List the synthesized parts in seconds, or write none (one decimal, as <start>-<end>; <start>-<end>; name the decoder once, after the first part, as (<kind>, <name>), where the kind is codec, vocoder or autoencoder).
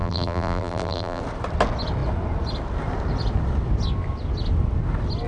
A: 0.0-1.2 (vocoder, BigVGAN v2)